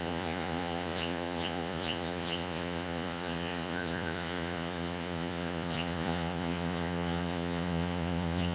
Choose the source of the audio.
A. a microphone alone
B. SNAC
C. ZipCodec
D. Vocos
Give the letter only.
D